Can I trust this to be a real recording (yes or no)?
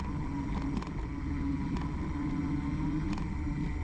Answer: yes